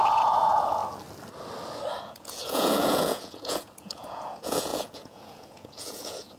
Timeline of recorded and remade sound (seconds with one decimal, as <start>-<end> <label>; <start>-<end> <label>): 0.0-0.8 remade; 0.8-2.0 recorded; 2.0-6.4 remade